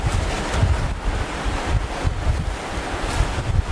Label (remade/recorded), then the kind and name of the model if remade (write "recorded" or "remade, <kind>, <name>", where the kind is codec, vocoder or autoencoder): recorded